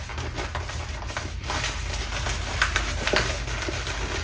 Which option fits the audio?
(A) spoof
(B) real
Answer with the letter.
B